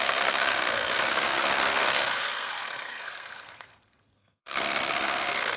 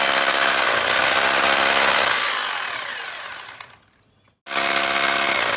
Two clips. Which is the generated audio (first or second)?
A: first